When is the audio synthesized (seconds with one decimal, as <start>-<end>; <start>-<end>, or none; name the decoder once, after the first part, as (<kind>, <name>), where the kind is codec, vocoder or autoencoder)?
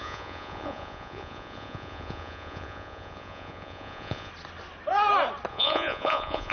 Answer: 0.0-4.3 (vocoder, Vocos); 5.5-6.5